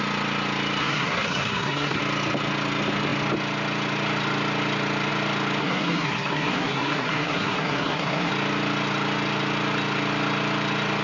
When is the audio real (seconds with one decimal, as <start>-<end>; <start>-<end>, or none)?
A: 0.0-0.8; 2.0-5.6; 8.3-11.0